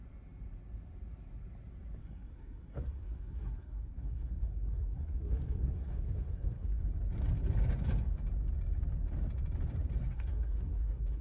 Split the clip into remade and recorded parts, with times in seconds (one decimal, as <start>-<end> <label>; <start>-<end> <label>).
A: 0.0-2.0 recorded; 2.0-6.8 remade; 6.8-10.0 recorded; 10.0-11.2 remade